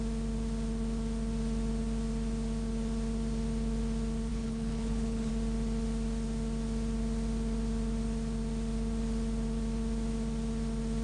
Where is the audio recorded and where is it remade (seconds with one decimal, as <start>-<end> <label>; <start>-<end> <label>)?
0.0-4.3 recorded; 4.3-5.3 remade; 5.3-11.0 recorded